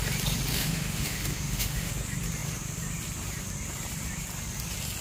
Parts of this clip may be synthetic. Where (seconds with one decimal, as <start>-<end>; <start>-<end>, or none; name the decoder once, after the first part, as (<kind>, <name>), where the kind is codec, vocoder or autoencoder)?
0.5-1.9 (autoencoder, DAC-VAE)